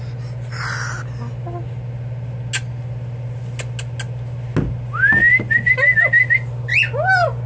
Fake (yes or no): no